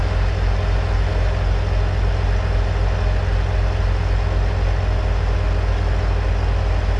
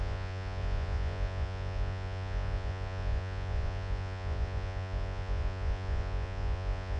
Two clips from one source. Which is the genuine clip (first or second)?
first